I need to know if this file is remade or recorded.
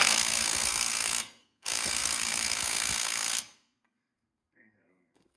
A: remade